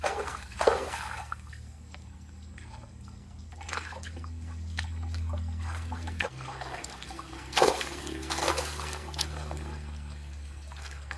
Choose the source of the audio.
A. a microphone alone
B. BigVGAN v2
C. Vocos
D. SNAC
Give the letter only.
D